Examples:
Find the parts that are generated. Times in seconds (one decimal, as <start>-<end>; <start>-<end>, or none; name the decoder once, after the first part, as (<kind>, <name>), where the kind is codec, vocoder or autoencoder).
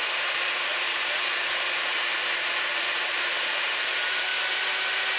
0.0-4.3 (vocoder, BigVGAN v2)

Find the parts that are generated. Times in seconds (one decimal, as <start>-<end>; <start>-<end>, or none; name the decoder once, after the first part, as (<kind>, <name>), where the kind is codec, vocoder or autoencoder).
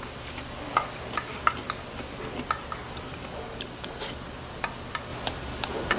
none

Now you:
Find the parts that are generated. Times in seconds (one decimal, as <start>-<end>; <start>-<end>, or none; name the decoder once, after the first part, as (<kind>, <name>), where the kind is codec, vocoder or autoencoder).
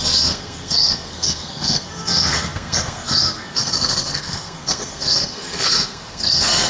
0.0-6.7 (codec, SNAC)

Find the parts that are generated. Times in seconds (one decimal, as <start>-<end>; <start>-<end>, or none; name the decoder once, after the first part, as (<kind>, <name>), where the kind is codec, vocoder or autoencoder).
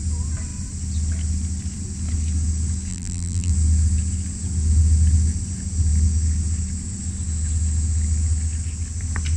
2.9-3.5 (vocoder, BigVGAN v2)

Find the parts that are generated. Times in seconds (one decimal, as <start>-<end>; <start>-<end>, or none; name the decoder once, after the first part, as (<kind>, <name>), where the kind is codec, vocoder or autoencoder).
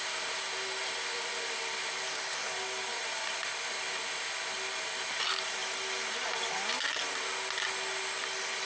none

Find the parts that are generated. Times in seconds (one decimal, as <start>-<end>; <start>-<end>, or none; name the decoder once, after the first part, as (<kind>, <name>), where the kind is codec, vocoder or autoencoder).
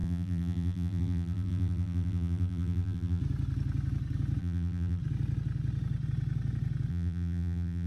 0.0-3.2 (vocoder, BigVGAN v2); 4.4-5.0; 6.9-7.9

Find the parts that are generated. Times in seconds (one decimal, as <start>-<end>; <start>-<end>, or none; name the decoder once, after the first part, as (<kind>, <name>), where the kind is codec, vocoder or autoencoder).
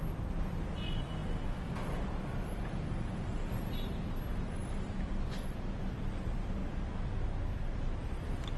0.0-6.6 (vocoder, BigVGAN v2); 7.6-8.6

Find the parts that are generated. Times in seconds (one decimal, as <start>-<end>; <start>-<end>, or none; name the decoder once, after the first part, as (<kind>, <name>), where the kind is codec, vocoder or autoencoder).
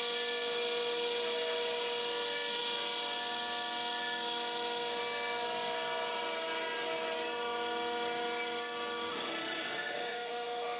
9.1-10.8 (autoencoder, DAC-VAE)